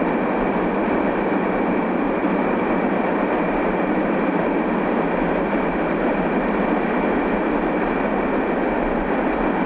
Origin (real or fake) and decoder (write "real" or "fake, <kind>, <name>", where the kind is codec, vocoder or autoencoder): real